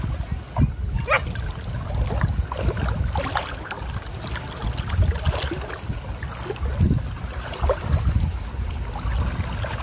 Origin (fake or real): real